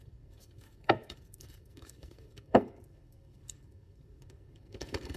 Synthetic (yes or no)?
yes